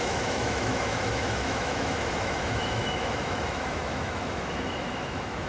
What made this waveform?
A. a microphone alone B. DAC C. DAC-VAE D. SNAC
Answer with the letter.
C